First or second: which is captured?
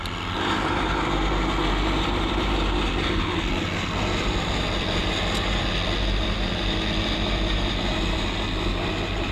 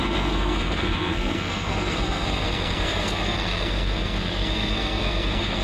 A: first